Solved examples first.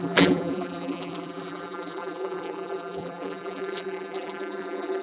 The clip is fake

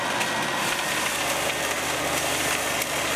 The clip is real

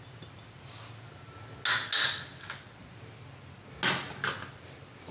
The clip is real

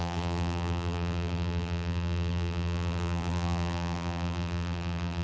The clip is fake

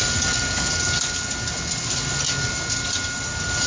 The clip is real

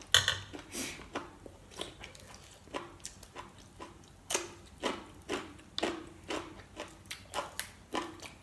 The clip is real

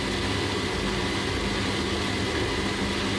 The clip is real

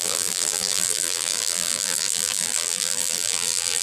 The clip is fake